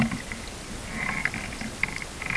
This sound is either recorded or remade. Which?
recorded